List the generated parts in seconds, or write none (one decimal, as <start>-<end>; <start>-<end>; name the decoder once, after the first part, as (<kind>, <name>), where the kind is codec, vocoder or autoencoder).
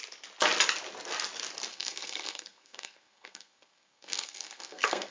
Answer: 1.7-5.1 (codec, SNAC)